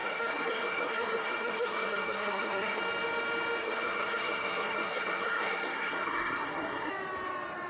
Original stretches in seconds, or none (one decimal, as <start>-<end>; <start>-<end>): 2.8-3.6; 6.9-7.7